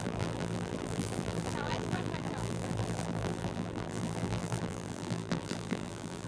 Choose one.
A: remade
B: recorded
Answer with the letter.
A